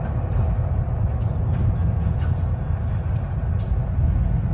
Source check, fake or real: real